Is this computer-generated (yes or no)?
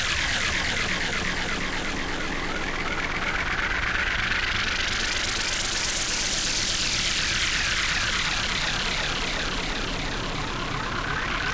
no